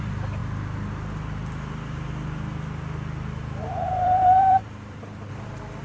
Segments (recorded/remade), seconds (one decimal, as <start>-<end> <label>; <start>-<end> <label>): 0.0-0.4 remade; 0.4-3.9 recorded; 3.9-5.8 remade